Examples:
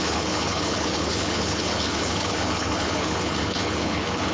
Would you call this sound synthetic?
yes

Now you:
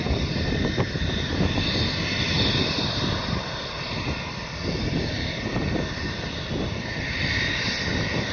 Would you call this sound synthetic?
yes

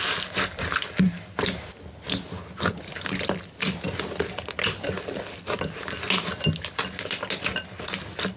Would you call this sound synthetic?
no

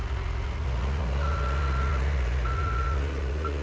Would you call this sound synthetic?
yes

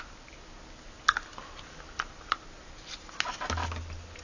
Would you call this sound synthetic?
no